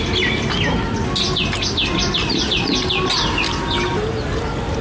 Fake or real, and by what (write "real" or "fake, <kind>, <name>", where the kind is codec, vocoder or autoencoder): real